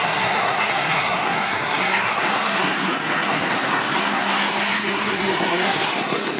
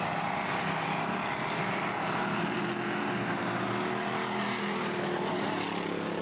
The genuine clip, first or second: second